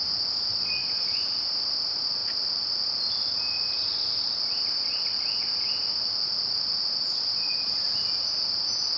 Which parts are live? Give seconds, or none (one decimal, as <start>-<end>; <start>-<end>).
0.0-0.8; 1.4-6.8; 7.7-9.0